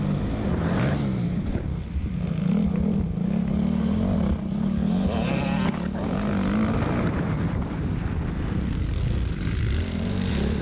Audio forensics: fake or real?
real